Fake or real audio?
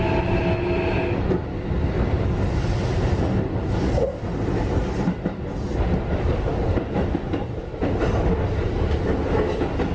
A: real